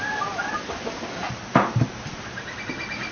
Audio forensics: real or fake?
fake